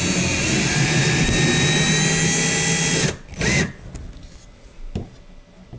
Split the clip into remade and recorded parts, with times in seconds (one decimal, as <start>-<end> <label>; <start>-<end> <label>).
0.0-5.8 recorded